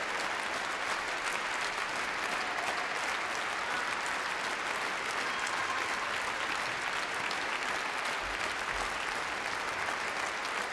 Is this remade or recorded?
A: recorded